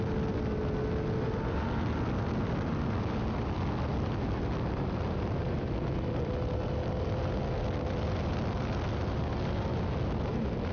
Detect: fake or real real